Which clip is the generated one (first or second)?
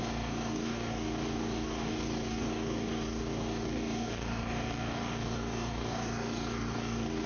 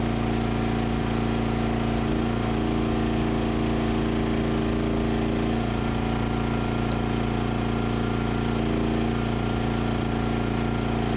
first